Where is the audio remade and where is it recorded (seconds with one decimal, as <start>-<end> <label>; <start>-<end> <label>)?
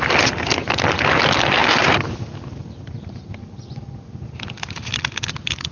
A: 0.0-5.7 recorded